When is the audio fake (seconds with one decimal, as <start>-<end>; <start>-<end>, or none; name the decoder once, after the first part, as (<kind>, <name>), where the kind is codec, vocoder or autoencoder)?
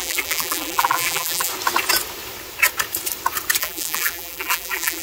0.0-1.5 (vocoder, BigVGAN v2); 3.6-5.0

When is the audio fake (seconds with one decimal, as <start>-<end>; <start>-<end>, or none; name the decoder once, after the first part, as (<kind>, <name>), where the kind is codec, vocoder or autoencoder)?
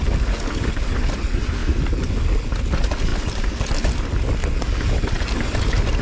3.1-3.8 (vocoder, BigVGAN v2)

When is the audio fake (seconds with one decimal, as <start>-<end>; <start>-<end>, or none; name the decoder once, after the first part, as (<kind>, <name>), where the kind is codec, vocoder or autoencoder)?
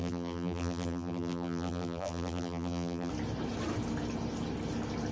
0.0-3.1 (vocoder, BigVGAN v2)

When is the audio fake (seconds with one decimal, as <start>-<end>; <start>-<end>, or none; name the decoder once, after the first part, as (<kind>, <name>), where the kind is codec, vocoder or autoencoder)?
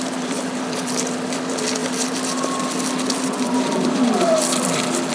0.0-5.1 (vocoder, BigVGAN v2)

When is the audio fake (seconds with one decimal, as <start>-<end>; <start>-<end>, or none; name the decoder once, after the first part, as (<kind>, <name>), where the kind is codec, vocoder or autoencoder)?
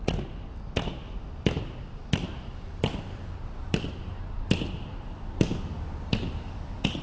2.0-6.1 (vocoder, BigVGAN v2)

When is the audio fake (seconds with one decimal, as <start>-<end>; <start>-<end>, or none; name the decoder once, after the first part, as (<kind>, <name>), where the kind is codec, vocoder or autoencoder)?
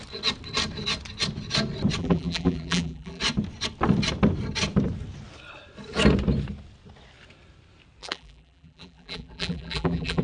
2.0-3.2 (vocoder, BigVGAN v2); 8.0-10.2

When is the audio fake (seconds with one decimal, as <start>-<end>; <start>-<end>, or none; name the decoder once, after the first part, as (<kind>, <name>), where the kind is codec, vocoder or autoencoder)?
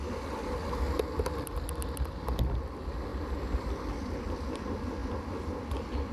3.1-3.7 (vocoder, BigVGAN v2)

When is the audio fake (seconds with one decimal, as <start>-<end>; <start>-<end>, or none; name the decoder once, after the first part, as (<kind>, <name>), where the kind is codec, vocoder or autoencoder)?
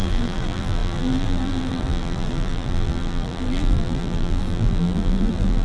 0.0-5.6 (vocoder, BigVGAN v2)